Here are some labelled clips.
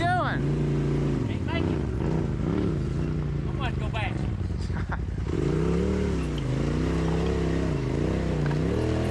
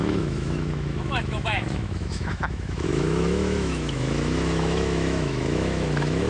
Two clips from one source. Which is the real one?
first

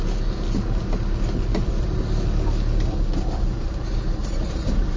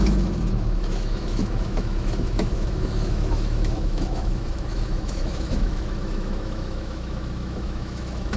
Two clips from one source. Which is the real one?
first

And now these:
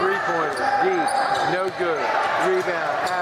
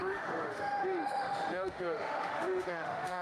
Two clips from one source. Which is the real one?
first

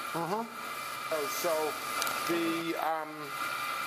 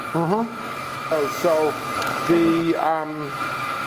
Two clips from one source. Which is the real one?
first